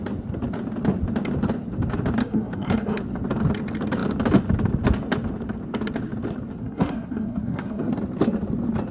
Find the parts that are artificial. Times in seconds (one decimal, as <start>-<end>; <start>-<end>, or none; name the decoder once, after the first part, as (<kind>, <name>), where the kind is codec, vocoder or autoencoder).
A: 2.2-3.0 (codec, SNAC); 6.6-7.9